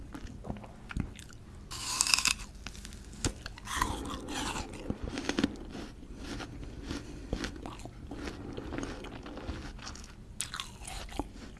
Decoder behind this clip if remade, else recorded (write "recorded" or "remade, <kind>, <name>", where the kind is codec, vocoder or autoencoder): recorded